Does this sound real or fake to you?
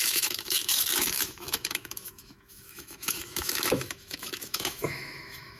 fake